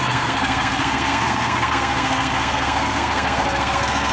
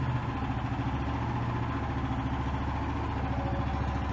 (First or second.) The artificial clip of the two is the first